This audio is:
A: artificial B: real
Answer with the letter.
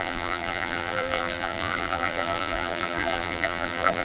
A